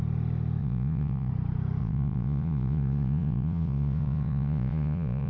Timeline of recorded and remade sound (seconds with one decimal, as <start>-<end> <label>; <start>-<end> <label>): 0.0-0.6 recorded; 0.6-1.3 remade; 1.3-1.8 recorded; 1.8-5.3 remade